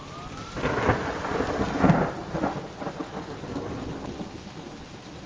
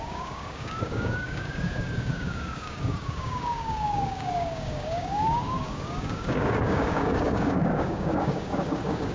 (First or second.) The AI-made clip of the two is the second